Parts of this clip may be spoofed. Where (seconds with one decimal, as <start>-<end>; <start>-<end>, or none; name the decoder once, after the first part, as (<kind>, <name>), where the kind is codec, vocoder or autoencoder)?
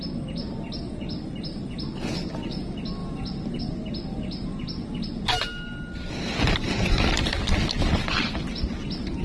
none